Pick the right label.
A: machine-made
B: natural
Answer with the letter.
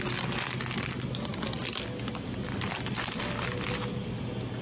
B